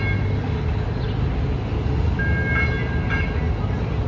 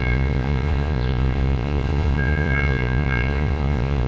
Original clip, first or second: first